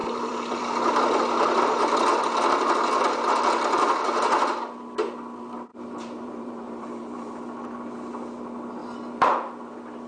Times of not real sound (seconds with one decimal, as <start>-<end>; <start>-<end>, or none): 0.0-0.6; 5.7-7.4